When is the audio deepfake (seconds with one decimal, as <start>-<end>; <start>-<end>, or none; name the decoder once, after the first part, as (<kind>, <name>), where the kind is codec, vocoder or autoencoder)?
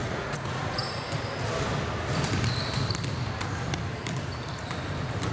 0.0-1.0 (vocoder, Vocos)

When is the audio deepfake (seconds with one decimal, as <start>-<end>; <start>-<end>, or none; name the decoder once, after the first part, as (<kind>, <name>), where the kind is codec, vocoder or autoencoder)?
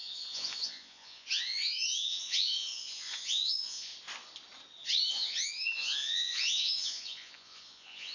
0.0-3.9 (vocoder, Vocos); 5.1-8.1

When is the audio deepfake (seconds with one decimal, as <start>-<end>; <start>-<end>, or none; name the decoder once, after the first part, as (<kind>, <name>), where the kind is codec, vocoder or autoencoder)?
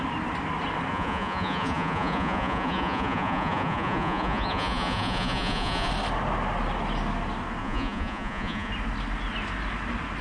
0.9-5.9 (vocoder, Vocos); 7.6-8.7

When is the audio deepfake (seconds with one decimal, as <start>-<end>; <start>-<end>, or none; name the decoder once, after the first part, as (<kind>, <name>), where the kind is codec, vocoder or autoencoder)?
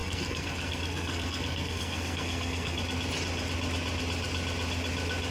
0.0-2.8 (codec, SNAC)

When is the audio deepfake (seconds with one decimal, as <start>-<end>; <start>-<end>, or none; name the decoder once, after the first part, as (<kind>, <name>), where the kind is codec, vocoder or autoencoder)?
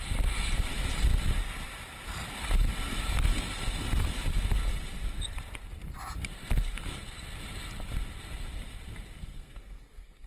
9.2-10.3 (codec, SNAC)